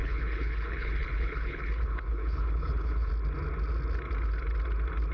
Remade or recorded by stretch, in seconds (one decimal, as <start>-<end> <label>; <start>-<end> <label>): 0.0-3.1 remade; 3.1-5.1 recorded